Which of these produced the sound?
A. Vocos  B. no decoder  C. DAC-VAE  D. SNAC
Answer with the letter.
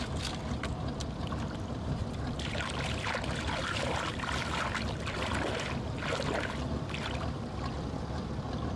B